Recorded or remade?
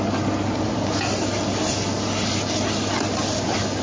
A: recorded